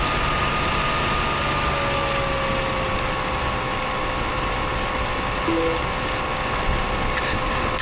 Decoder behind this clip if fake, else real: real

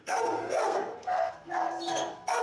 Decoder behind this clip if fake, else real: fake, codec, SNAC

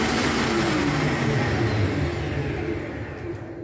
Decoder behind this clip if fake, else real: real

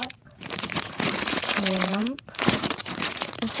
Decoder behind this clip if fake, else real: fake, vocoder, Vocos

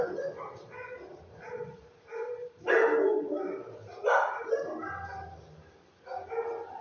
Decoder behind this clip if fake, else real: real